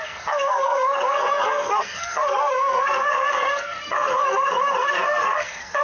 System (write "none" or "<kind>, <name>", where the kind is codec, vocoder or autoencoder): codec, SNAC